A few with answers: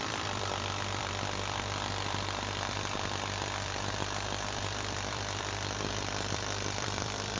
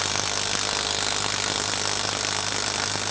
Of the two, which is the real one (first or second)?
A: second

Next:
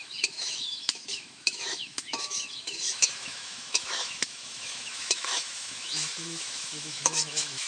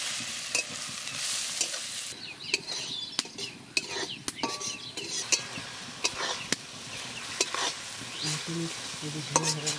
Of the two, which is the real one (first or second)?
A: second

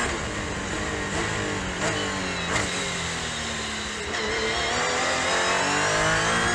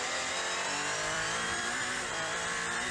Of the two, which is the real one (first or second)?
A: first